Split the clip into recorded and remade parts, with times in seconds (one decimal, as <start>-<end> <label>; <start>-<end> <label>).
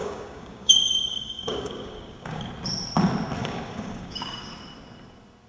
0.0-2.4 remade; 2.4-3.4 recorded; 3.4-4.5 remade; 4.5-5.5 recorded